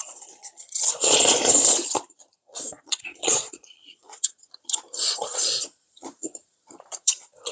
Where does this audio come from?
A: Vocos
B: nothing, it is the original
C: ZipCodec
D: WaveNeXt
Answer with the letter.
A